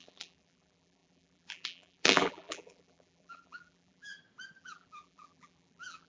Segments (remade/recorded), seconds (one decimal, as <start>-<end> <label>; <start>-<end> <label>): 0.0-4.1 remade; 4.1-4.6 recorded; 4.6-6.1 remade

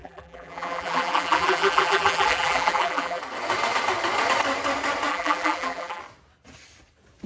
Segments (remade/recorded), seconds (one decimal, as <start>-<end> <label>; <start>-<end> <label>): 0.0-3.2 remade; 3.2-5.1 recorded; 5.1-6.0 remade; 6.0-7.3 recorded